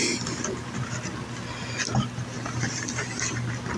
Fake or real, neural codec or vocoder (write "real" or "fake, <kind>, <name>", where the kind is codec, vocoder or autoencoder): real